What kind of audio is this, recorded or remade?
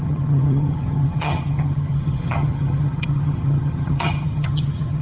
remade